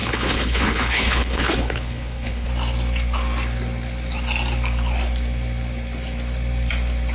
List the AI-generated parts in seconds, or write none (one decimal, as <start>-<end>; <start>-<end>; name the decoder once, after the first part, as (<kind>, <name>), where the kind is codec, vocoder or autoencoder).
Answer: 0.0-2.5 (codec, HILCodec)